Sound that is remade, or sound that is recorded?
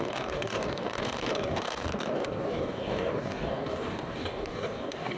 remade